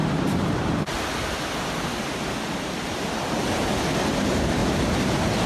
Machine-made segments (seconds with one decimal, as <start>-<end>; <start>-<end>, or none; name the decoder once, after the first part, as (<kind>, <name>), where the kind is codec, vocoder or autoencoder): 0.0-1.3 (vocoder, BigVGAN v2); 4.6-5.5